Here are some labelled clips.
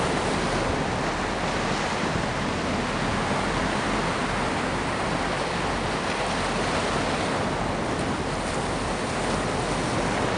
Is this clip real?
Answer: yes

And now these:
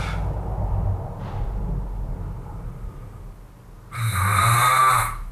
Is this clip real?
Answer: yes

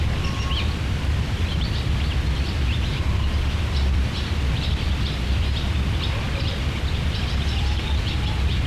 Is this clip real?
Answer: no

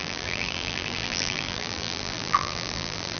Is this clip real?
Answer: no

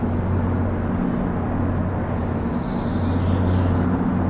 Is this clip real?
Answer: yes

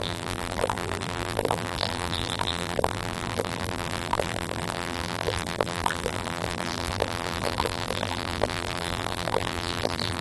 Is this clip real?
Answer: no